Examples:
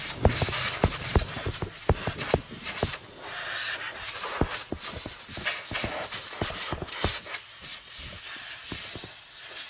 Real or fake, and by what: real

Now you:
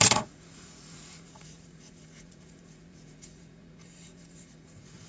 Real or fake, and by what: fake, vocoder, Vocos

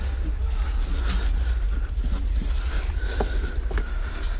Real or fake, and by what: real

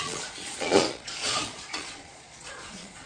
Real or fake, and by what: fake, vocoder, Vocos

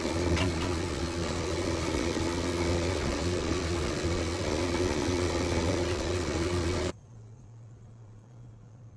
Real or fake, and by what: fake, vocoder, Vocos